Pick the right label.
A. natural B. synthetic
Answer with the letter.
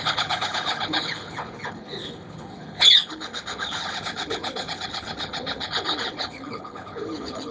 B